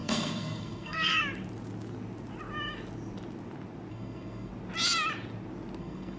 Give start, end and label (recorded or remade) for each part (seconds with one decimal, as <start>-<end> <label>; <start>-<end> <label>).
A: 0.0-1.2 remade; 1.2-3.9 recorded; 3.9-4.5 remade; 4.5-5.8 recorded; 5.8-6.2 remade